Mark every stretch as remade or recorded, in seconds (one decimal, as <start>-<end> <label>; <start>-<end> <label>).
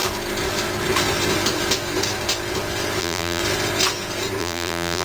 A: 0.0-3.0 recorded; 3.0-3.4 remade; 3.4-4.4 recorded; 4.4-5.0 remade